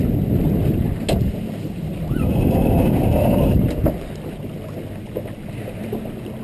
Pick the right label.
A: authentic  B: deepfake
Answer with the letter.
A